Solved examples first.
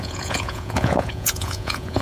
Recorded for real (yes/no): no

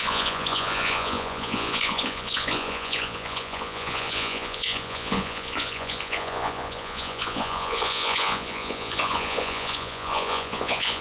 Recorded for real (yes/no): no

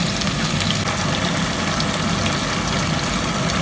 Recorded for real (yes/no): yes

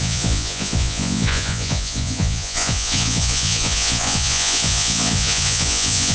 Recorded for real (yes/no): no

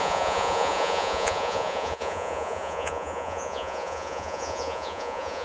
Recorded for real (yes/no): no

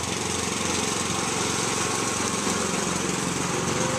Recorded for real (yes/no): yes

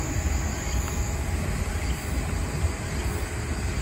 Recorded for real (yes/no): yes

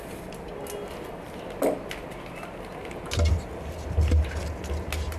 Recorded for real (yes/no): yes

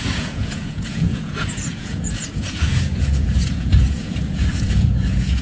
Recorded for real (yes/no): no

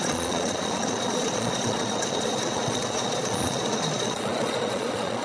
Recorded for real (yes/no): no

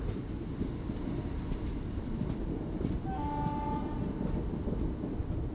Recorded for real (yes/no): yes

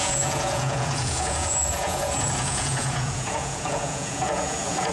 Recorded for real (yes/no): no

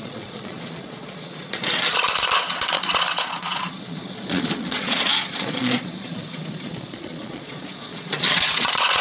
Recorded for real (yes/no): no